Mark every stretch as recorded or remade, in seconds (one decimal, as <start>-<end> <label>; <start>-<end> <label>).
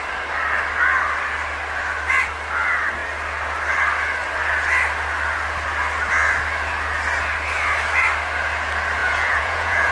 0.0-9.0 recorded; 9.0-9.9 remade